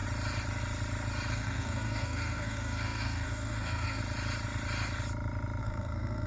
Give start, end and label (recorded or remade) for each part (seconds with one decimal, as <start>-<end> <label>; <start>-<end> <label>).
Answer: 0.0-1.3 recorded; 1.3-4.0 remade; 4.0-5.6 recorded; 5.6-6.3 remade